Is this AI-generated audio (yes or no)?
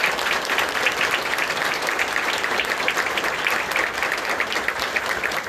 no